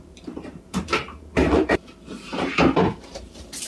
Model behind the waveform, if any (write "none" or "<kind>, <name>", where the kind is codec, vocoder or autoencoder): vocoder, BigVGAN v2